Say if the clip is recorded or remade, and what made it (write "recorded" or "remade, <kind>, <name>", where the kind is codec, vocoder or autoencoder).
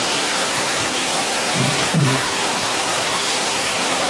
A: remade, codec, SNAC